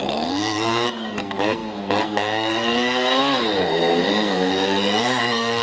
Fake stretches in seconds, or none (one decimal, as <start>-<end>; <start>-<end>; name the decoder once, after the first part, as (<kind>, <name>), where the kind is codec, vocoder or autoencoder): 0.0-5.6 (codec, SNAC)